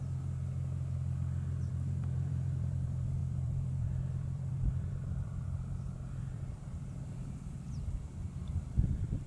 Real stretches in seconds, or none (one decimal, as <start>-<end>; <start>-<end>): 0.0-1.7; 8.2-8.9